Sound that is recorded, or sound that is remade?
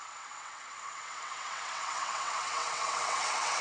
remade